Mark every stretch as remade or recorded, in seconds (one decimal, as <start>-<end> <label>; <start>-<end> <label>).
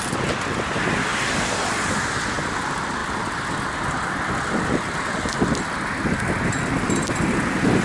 0.0-1.1 recorded; 1.1-2.0 remade; 2.0-3.0 recorded; 3.0-3.6 remade; 3.6-7.8 recorded